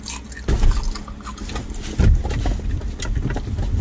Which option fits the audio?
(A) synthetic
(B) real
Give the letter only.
B